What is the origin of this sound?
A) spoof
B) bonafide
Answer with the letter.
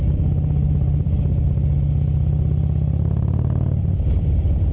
B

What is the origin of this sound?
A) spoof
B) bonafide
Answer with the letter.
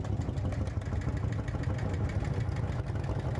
B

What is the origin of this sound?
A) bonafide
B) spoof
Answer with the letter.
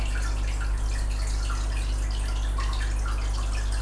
A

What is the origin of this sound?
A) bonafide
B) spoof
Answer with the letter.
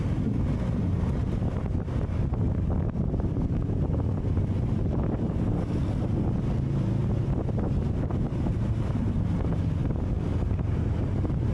A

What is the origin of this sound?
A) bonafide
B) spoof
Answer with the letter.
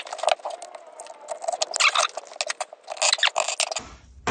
A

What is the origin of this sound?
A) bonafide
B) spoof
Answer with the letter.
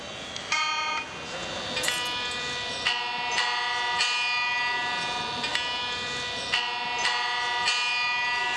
A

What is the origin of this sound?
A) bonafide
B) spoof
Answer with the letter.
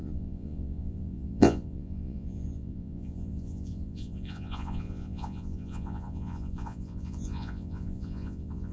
B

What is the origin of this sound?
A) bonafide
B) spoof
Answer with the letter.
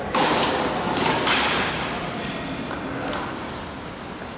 A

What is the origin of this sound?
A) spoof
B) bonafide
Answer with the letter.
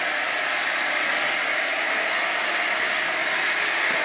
B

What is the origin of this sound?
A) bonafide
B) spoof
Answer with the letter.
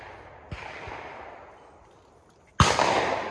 A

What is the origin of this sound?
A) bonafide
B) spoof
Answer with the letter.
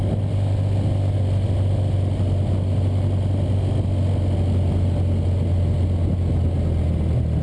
A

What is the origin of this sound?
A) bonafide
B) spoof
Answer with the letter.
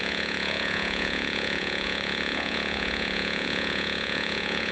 B